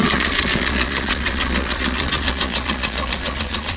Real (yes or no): no